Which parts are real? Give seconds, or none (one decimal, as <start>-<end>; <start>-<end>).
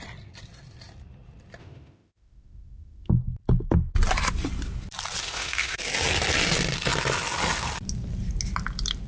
0.0-1.6; 3.1-5.2; 5.8-9.1